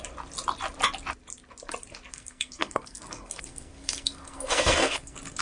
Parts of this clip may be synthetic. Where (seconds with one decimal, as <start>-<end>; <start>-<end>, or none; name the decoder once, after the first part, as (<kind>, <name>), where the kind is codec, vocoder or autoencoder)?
2.1-5.4 (codec, SNAC)